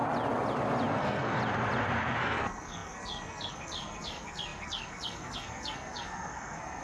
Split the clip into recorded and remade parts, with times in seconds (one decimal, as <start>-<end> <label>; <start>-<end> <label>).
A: 0.0-0.9 recorded; 0.9-1.4 remade; 1.4-2.2 recorded; 2.2-6.8 remade